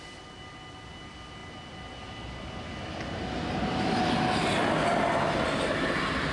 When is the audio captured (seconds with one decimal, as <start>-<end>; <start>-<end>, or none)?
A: 0.0-6.3